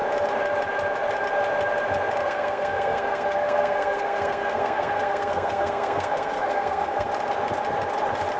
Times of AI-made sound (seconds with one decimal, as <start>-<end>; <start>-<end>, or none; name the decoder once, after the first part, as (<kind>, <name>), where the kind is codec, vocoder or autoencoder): 2.2-7.1 (codec, SNAC)